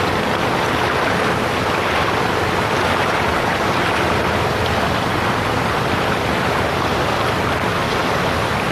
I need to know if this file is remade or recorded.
recorded